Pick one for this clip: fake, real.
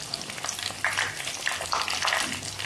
real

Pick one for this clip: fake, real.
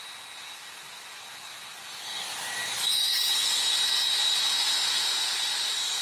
real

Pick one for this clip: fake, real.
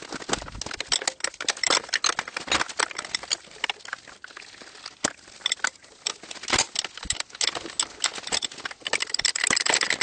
real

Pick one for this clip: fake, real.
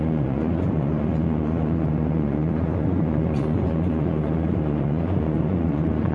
fake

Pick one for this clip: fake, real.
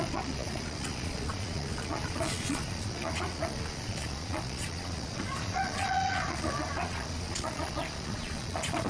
fake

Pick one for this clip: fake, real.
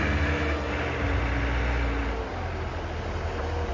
real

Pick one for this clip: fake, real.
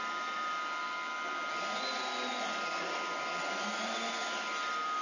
real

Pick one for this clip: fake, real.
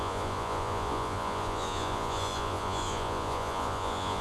fake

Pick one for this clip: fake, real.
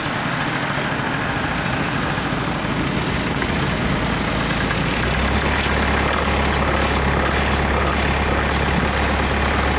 real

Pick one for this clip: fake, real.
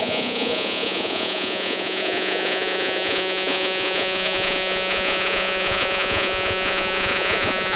fake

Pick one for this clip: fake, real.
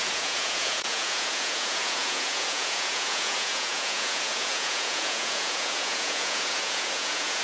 fake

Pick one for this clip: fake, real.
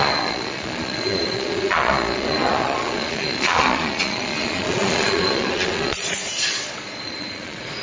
fake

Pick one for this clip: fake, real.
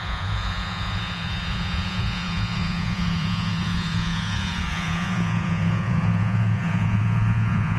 fake